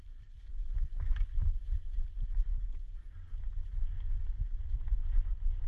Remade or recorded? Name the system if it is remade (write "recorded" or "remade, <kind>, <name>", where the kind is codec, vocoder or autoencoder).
remade, vocoder, BigVGAN v2